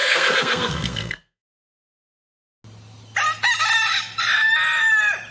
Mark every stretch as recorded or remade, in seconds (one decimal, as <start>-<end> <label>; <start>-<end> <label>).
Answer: 0.0-1.7 remade; 1.7-5.3 recorded